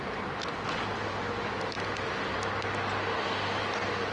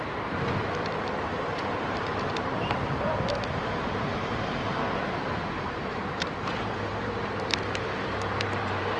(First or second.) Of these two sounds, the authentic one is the first